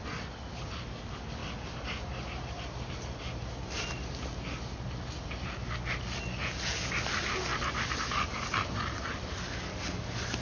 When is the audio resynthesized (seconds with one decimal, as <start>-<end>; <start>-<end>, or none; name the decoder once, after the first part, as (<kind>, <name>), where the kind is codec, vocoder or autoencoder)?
6.4-6.9 (vocoder, Vocos)